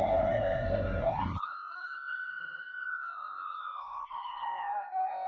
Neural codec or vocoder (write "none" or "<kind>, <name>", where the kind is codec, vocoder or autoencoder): codec, SNAC